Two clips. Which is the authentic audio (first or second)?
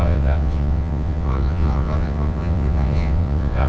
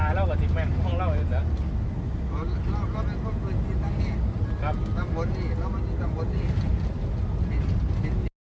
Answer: second